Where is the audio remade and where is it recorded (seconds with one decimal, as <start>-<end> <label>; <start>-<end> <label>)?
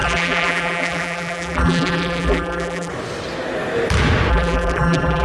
0.0-2.9 remade; 2.9-4.3 recorded; 4.3-5.2 remade